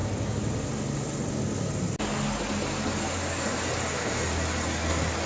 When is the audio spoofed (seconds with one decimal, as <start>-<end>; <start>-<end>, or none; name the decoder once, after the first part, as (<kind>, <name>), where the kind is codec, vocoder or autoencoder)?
none